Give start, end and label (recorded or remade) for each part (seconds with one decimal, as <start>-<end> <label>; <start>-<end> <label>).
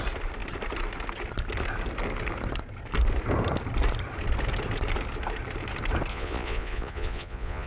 0.0-6.1 recorded; 6.1-7.7 remade